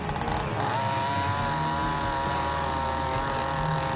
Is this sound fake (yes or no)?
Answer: no